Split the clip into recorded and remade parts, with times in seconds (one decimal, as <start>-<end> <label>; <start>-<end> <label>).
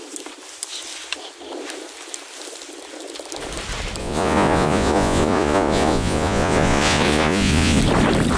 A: 0.0-4.0 recorded; 4.0-7.8 remade; 7.8-8.4 recorded